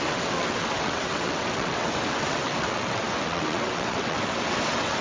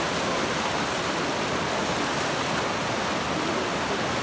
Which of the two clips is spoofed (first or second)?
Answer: first